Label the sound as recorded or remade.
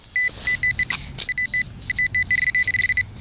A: recorded